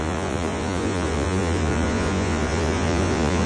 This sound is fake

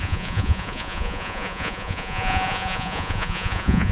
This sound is fake